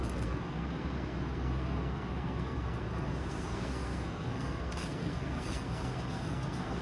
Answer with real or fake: fake